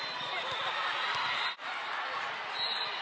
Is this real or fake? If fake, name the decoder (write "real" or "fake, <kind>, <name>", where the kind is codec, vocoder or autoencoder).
real